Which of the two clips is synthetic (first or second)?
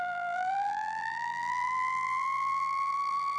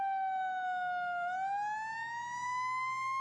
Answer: first